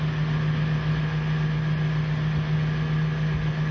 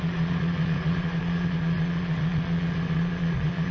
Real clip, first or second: first